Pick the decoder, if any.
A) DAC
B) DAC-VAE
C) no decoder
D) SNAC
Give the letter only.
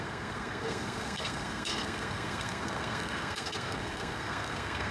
D